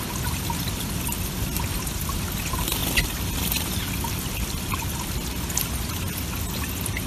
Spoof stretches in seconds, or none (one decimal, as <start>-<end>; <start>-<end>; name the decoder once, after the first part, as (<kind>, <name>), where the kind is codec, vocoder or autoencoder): none